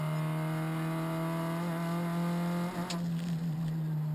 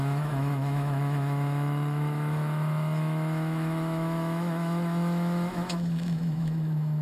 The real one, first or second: first